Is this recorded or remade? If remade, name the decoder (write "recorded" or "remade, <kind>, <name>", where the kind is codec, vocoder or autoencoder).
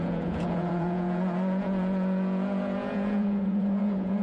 remade, vocoder, Vocos